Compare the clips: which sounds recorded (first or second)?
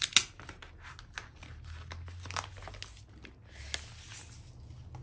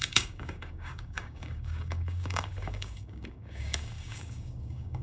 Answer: first